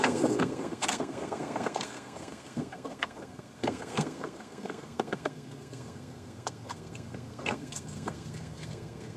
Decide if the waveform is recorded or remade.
remade